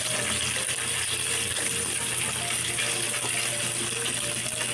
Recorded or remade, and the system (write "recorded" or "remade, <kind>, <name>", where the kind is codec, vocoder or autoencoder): recorded